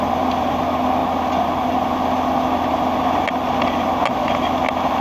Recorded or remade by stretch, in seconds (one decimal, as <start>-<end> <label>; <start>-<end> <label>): 0.0-5.0 recorded